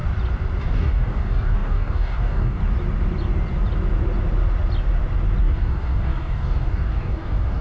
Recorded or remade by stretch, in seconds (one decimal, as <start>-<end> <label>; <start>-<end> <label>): 0.0-0.6 recorded; 0.6-2.6 remade; 2.6-5.4 recorded; 5.4-7.6 remade